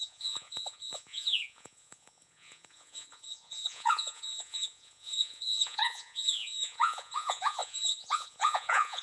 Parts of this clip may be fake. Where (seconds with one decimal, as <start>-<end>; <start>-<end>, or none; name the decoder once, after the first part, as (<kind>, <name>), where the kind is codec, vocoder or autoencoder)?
0.0-9.0 (vocoder, Vocos)